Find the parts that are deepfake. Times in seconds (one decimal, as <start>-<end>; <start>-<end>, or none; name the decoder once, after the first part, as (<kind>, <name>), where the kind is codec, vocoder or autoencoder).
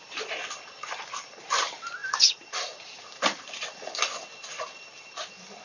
none